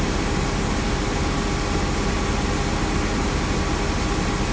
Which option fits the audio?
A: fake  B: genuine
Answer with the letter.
B